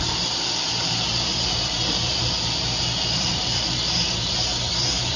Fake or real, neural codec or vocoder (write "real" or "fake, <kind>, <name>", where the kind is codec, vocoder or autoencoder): fake, vocoder, BigVGAN v2